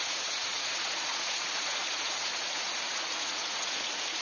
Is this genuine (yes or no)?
no